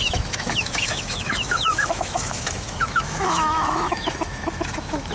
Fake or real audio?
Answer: fake